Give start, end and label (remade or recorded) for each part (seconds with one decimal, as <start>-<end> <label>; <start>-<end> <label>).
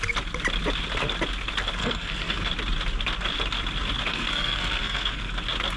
0.0-1.8 recorded; 1.8-2.5 remade; 2.5-4.1 recorded; 4.1-5.3 remade; 5.3-5.8 recorded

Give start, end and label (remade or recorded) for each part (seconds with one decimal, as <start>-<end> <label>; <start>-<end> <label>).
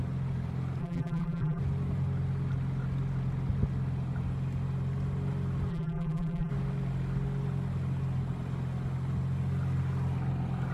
0.0-0.8 recorded; 0.8-1.6 remade; 1.6-5.7 recorded; 5.7-6.5 remade; 6.5-10.7 recorded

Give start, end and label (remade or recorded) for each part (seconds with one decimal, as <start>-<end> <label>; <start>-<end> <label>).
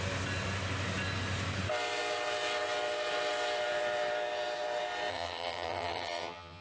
0.0-5.1 recorded; 5.1-6.6 remade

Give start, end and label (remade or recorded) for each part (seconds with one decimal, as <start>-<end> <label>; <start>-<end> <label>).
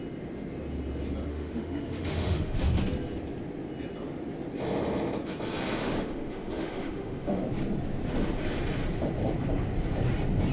0.0-1.3 recorded; 1.3-2.8 remade; 2.8-5.8 recorded; 5.8-7.4 remade; 7.4-10.5 recorded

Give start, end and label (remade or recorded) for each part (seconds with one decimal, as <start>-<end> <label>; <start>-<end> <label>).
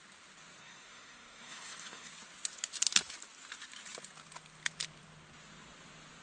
0.0-0.6 recorded; 0.6-2.1 remade; 2.1-6.2 recorded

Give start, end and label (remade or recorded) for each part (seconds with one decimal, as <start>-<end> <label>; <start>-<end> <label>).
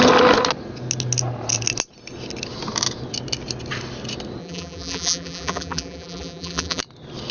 0.0-4.4 recorded; 4.4-6.8 remade; 6.8-7.3 recorded